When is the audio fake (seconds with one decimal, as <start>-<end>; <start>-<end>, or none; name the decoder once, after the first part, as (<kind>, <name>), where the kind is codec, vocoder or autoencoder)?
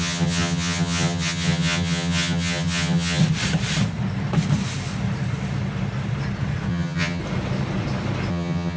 0.0-3.2 (vocoder, HiFi-GAN); 6.7-7.2; 8.3-8.8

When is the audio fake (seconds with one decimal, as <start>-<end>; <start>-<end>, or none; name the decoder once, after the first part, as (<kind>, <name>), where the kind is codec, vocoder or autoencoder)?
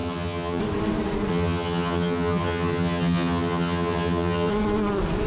0.0-0.6 (vocoder, HiFi-GAN); 1.3-4.5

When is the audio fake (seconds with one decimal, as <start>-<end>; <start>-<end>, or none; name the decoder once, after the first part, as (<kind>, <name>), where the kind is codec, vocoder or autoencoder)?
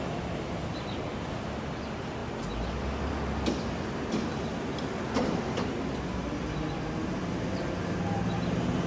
none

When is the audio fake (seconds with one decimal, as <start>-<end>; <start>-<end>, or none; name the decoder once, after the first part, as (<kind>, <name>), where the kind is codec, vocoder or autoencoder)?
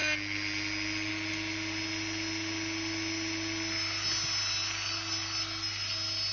none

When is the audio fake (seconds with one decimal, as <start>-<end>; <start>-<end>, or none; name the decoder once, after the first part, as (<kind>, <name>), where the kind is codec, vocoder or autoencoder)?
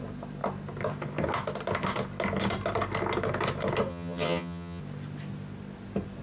3.9-4.8 (vocoder, HiFi-GAN)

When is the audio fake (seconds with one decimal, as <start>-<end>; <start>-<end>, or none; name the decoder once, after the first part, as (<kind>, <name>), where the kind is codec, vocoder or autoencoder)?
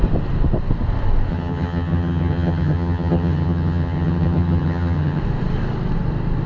1.3-5.2 (vocoder, HiFi-GAN)